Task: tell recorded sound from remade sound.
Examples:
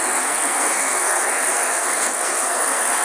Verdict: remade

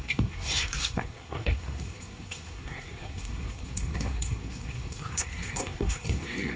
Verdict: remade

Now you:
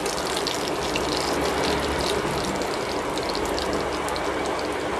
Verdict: recorded